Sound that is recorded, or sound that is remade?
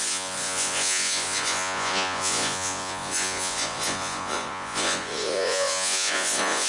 remade